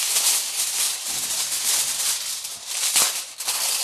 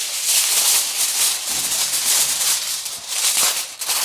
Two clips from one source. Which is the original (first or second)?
second